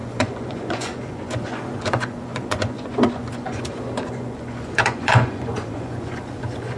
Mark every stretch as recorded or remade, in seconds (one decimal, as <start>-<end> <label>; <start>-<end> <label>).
0.0-6.8 remade